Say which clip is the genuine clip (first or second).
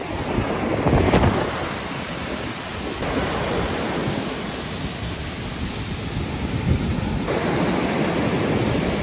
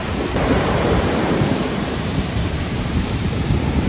first